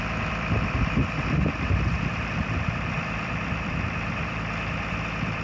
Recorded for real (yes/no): no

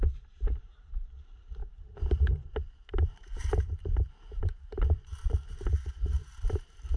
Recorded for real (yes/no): no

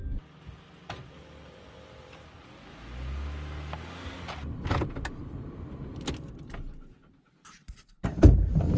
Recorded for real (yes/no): yes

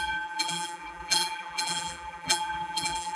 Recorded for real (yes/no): no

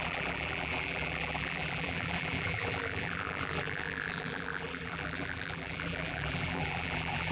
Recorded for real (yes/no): no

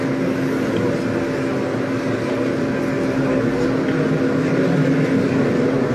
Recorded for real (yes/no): yes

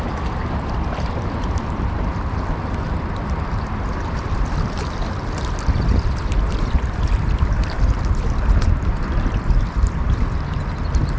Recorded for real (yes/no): no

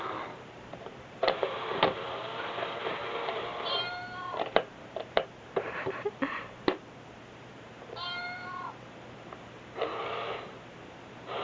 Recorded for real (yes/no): no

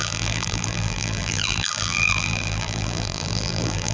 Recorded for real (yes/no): no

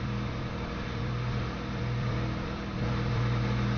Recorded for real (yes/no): no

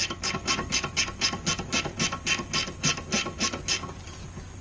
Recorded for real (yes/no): yes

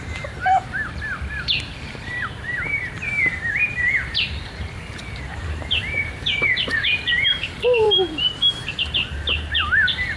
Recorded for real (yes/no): no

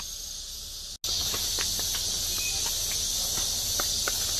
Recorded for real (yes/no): yes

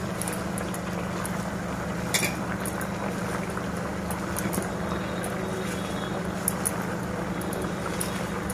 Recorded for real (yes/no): yes